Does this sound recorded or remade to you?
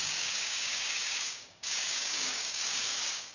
remade